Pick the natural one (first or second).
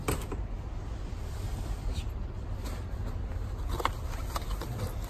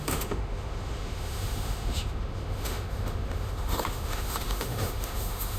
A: first